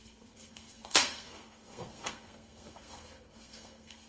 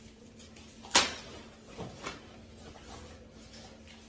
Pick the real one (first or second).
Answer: second